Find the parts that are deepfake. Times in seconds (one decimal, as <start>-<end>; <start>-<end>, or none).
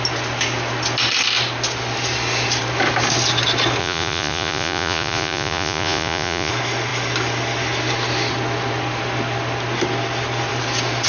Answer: 3.8-6.5